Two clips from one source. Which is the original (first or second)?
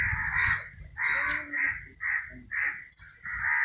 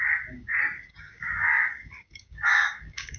first